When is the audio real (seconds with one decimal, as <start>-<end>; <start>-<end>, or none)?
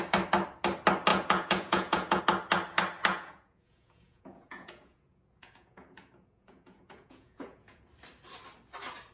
0.0-1.1; 2.2-3.1; 7.9-9.1